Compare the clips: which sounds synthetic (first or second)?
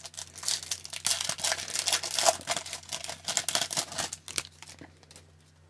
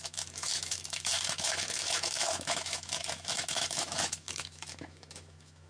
second